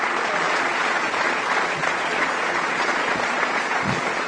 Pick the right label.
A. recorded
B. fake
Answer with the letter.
B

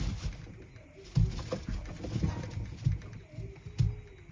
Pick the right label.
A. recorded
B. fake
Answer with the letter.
A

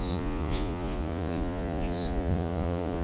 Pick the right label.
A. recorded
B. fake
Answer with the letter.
B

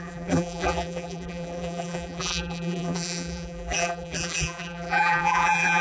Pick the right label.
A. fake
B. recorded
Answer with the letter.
A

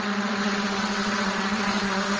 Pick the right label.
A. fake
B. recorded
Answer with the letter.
A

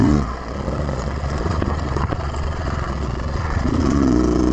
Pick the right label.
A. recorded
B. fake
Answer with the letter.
B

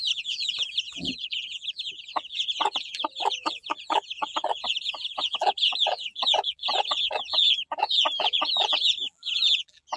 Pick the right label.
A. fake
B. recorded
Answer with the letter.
A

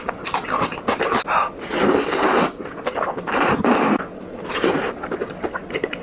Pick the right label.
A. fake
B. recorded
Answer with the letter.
B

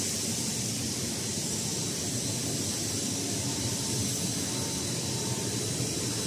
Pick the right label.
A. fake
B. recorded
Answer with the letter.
B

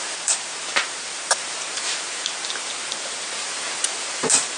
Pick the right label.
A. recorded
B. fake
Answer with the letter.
B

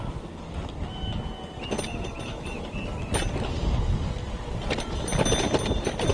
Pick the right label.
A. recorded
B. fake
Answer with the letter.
A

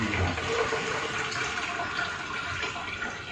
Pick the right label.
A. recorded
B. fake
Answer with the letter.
A